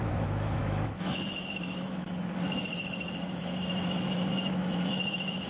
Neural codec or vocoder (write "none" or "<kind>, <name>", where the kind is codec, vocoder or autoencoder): autoencoder, DAC-VAE